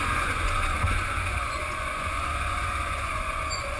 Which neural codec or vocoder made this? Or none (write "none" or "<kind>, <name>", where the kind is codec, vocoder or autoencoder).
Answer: vocoder, Vocos